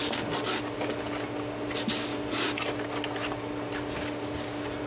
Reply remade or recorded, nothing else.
recorded